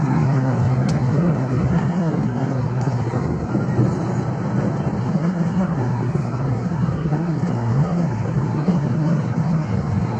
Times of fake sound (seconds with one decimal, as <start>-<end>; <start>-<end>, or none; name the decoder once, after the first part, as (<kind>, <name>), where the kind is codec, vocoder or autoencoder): 0.0-3.5 (codec, SNAC); 5.0-10.2